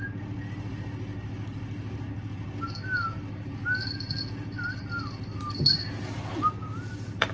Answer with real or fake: real